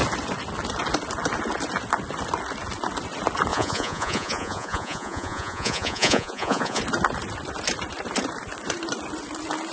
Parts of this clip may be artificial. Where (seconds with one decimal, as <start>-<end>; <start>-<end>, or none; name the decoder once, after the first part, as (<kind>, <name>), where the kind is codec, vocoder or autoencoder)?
3.5-6.8 (vocoder, Vocos)